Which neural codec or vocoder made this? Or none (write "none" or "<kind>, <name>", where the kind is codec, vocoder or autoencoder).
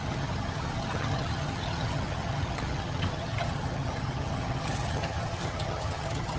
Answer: vocoder, HiFi-GAN